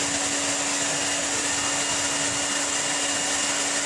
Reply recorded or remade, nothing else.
recorded